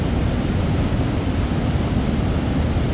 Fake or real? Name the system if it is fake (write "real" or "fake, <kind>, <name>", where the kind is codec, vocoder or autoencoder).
real